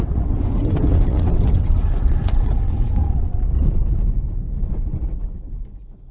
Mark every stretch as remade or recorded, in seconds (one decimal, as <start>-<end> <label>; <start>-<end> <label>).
0.0-3.8 remade; 3.8-6.1 recorded

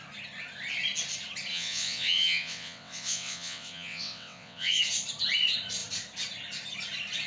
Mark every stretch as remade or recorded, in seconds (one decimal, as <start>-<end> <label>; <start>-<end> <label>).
0.0-1.5 recorded; 1.5-4.8 remade; 4.8-7.3 recorded

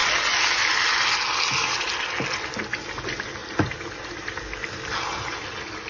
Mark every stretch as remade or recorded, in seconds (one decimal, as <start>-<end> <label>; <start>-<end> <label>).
0.0-5.9 recorded

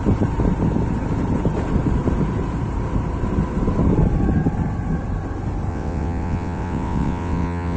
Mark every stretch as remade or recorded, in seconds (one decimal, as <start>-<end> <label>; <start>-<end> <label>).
0.0-5.7 recorded; 5.7-7.8 remade

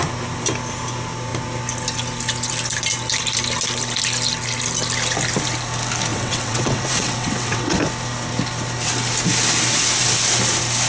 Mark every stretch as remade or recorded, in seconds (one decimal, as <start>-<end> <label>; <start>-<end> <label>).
0.0-6.1 recorded; 6.1-7.8 remade; 7.8-10.9 recorded